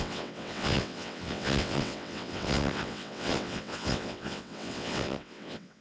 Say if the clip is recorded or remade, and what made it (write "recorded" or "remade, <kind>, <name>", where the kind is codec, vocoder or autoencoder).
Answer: remade, vocoder, WaveNeXt